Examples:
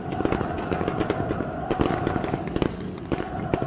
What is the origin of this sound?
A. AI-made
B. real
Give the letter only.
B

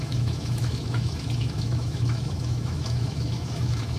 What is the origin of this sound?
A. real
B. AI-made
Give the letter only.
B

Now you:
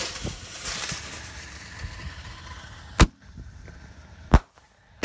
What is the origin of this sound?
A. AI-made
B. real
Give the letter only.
B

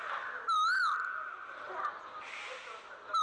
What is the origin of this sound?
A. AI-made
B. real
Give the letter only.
B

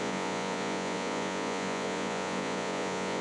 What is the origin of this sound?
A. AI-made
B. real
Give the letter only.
A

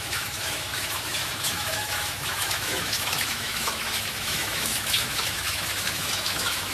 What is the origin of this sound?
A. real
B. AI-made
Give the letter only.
B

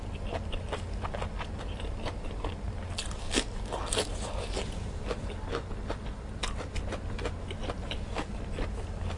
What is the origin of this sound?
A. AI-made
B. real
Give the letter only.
B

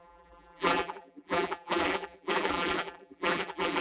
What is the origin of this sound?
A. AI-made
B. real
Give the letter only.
A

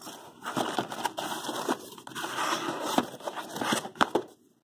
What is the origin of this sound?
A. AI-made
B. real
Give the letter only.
B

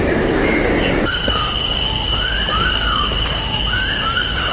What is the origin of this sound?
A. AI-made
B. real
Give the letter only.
A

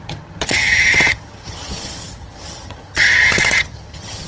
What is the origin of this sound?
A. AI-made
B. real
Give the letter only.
A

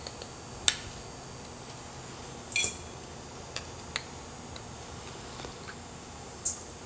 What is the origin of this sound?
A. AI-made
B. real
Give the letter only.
B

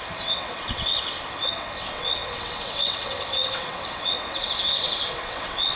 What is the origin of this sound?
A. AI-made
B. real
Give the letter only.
A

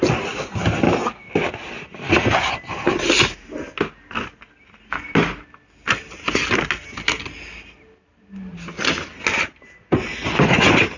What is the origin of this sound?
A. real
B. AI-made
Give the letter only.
A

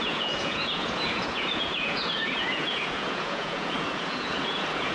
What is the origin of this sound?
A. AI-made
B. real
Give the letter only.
A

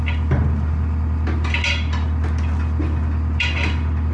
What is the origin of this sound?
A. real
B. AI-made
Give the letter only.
A